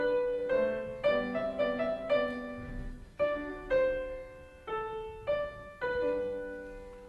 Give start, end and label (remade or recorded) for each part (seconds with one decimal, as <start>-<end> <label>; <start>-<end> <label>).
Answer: 0.0-2.7 recorded; 2.7-3.5 remade; 3.5-7.1 recorded